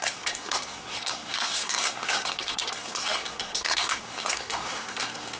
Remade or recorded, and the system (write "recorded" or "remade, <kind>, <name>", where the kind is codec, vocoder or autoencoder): remade, codec, SNAC